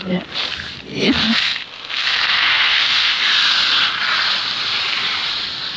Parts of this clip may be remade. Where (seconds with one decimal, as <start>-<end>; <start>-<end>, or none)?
1.2-3.2